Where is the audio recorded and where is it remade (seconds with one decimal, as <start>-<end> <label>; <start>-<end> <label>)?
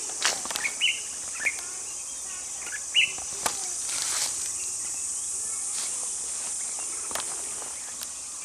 0.0-8.4 recorded